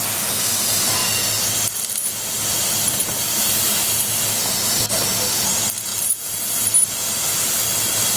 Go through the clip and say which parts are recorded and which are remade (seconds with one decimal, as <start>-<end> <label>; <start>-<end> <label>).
0.0-8.2 recorded